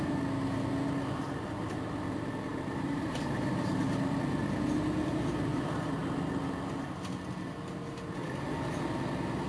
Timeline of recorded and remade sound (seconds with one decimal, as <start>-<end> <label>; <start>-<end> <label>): 0.0-2.5 recorded; 2.5-3.7 remade; 3.7-5.5 recorded; 5.5-6.0 remade; 6.0-9.5 recorded